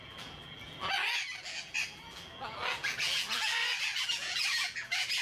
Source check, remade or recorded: remade